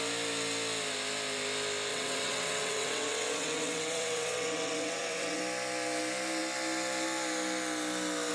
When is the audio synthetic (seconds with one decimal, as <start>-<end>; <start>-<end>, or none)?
1.9-5.4